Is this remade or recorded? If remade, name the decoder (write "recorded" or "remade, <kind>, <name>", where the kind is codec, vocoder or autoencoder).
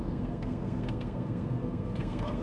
remade, codec, SNAC